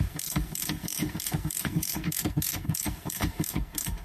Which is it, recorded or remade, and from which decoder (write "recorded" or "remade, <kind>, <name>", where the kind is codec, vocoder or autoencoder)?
remade, codec, SNAC